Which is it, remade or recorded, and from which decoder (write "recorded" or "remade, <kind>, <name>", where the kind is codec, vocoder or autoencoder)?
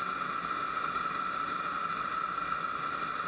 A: recorded